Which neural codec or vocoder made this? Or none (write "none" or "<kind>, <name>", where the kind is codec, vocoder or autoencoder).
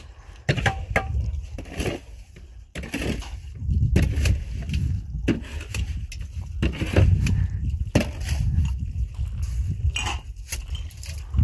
none